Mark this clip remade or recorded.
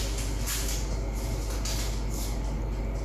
recorded